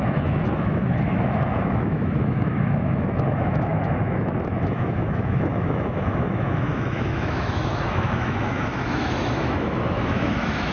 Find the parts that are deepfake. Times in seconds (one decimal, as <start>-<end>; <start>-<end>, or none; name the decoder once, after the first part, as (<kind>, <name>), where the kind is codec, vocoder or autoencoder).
0.0-10.7 (autoencoder, DAC-VAE)